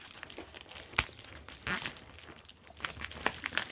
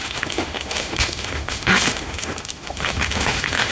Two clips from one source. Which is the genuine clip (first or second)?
first